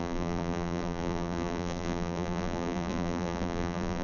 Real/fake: fake